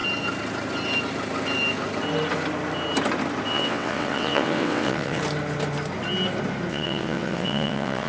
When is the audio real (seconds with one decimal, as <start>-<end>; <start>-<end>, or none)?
0.0-3.5; 5.2-6.7